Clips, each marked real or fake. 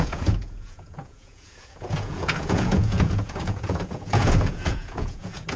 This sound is fake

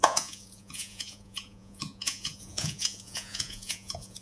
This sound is fake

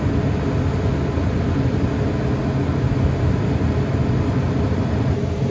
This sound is real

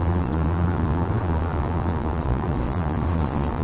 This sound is fake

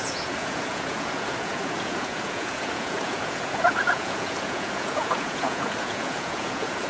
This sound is fake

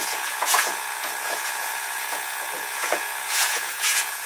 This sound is fake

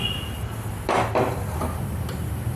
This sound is real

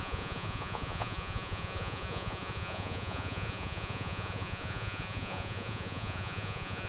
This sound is fake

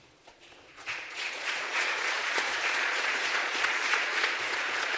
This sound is fake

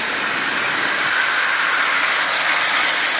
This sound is real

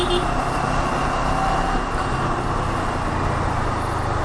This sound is real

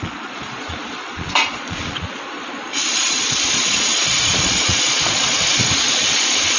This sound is fake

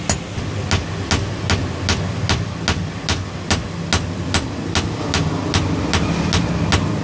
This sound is real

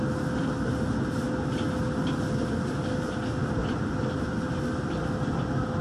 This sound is real